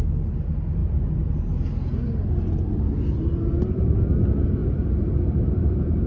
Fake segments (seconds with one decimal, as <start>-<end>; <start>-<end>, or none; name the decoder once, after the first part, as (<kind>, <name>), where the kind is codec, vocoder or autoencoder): none